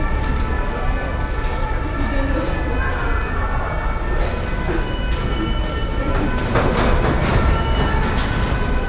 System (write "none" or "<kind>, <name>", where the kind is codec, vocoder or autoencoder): none